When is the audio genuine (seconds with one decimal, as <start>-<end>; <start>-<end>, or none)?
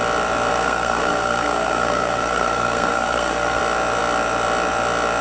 0.0-0.5; 3.6-5.2